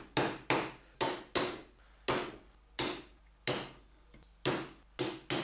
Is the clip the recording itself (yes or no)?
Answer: yes